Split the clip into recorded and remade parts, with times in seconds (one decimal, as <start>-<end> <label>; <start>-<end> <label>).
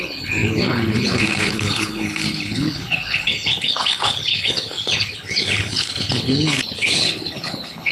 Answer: 0.0-7.9 remade